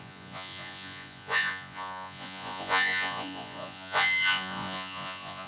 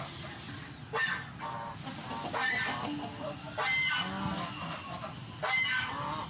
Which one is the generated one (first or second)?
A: first